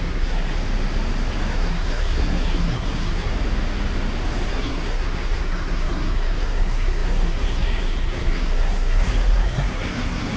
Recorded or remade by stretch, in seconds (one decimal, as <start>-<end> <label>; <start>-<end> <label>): 0.0-0.5 remade; 0.5-1.5 recorded; 1.5-3.3 remade; 3.3-4.5 recorded; 4.5-10.4 remade